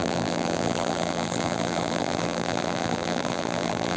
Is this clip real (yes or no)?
no